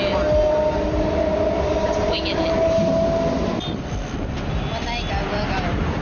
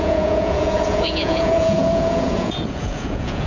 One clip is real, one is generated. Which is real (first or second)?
first